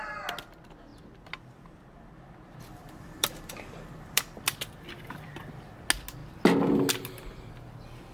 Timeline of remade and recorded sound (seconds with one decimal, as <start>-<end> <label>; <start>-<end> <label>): 0.0-0.9 recorded; 0.9-5.5 remade; 5.5-8.1 recorded